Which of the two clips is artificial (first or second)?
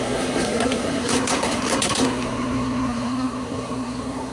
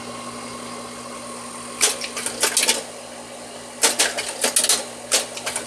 first